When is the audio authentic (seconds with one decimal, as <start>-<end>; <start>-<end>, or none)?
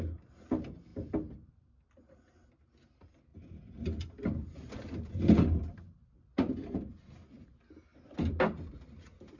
0.0-0.9; 1.5-3.3; 6.9-9.4